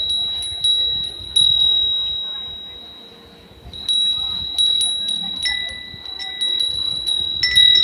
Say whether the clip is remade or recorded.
recorded